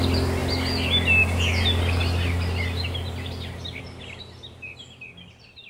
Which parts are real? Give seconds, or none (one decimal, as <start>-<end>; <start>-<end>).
0.0-5.7